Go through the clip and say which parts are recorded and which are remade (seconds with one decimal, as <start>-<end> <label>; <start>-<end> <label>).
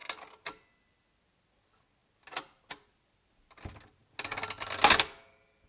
0.0-5.7 recorded